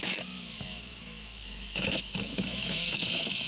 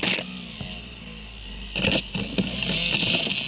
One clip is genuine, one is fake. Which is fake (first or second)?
first